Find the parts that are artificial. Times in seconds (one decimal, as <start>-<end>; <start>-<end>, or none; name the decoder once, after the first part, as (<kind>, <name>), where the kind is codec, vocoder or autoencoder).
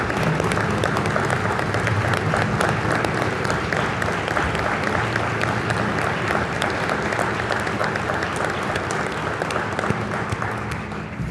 none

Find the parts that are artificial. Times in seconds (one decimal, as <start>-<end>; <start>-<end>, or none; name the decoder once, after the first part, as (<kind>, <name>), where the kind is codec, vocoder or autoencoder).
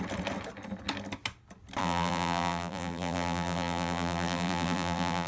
1.8-5.3 (vocoder, BigVGAN v2)